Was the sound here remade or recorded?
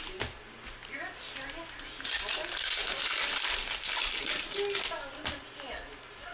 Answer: recorded